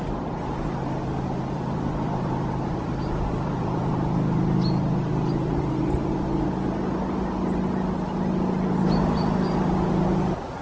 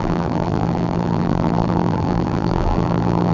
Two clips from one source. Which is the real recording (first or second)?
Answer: first